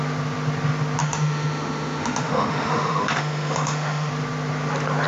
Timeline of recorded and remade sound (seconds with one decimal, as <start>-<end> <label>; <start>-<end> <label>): 0.0-1.0 recorded; 1.0-4.1 remade; 4.1-5.1 recorded

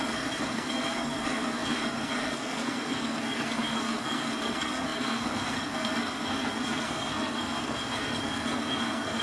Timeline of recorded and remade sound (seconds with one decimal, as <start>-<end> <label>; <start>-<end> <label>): 0.0-9.2 remade

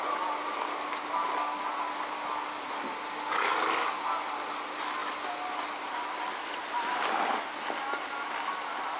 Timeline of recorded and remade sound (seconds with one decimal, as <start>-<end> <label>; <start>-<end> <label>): 0.0-9.0 recorded

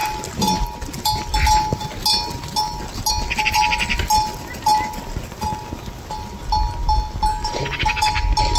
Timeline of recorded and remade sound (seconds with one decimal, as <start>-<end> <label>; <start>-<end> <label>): 0.0-7.3 recorded; 7.3-8.1 remade; 8.1-8.6 recorded